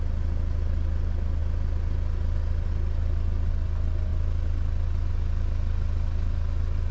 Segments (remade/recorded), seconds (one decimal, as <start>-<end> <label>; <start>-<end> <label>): 0.0-6.9 recorded